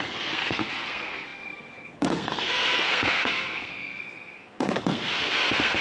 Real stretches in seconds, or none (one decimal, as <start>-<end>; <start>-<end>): none